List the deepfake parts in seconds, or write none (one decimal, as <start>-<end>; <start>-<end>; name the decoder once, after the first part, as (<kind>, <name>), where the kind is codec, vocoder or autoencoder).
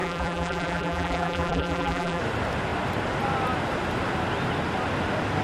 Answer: 0.0-2.2 (vocoder, BigVGAN v2)